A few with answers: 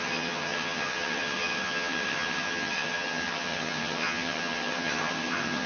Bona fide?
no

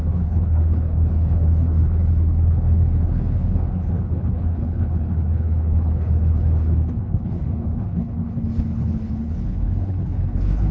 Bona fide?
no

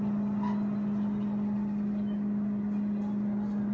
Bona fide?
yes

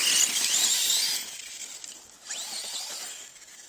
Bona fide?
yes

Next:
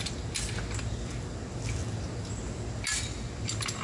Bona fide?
yes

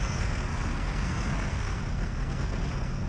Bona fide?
no